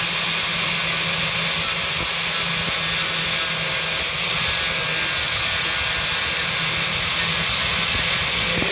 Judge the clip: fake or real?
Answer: real